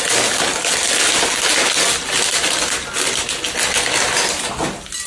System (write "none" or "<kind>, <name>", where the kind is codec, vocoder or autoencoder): none